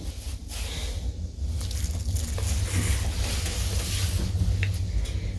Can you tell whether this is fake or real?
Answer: real